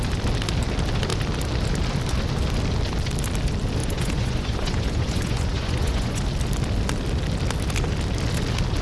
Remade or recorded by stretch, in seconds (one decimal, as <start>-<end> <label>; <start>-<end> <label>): 0.0-3.8 recorded; 3.8-6.2 remade; 6.2-8.8 recorded